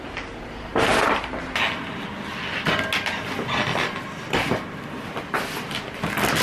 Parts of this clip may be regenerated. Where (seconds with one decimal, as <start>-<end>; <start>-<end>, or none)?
none